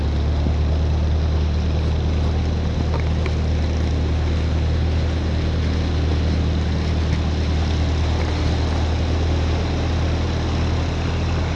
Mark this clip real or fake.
real